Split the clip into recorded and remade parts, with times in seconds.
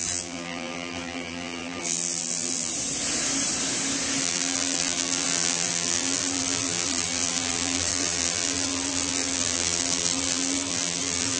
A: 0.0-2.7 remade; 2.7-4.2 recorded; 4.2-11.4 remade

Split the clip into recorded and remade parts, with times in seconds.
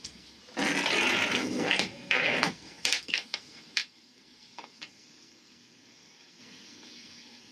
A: 0.0-0.4 remade; 0.4-1.3 recorded; 1.3-7.5 remade